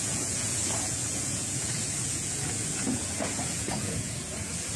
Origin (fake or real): fake